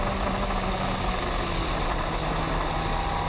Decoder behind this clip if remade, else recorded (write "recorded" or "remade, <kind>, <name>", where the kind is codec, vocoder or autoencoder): recorded